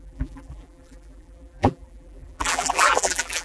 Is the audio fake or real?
fake